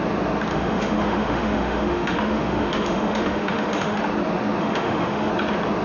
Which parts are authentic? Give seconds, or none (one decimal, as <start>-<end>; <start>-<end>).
0.0-0.5; 4.0-4.6; 5.3-5.8